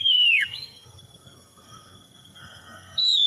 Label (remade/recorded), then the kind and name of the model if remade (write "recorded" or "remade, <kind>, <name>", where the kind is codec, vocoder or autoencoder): remade, codec, SNAC